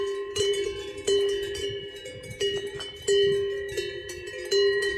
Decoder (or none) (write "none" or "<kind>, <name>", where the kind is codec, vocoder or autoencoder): vocoder, BigVGAN v2